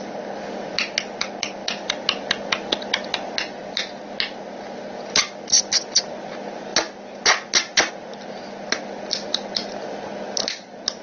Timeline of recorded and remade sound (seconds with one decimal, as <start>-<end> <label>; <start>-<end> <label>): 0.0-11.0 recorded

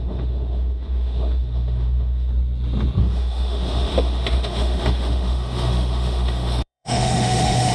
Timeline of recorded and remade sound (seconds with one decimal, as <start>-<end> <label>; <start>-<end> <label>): 0.0-2.3 remade; 2.3-3.0 recorded; 3.0-7.7 remade

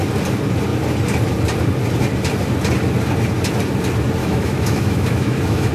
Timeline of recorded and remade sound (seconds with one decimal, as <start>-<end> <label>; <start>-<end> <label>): 0.0-4.2 recorded; 4.2-5.7 remade